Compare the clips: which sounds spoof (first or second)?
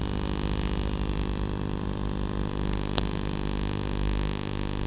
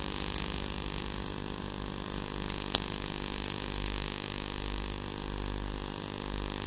second